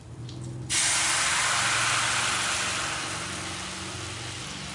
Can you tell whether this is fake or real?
real